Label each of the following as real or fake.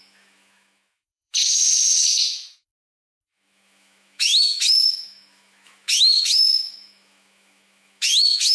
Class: fake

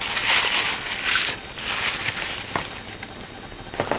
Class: real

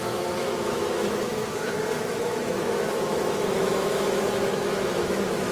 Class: fake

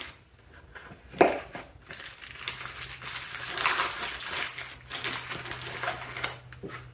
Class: real